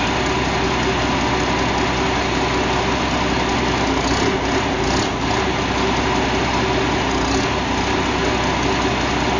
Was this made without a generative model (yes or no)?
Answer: yes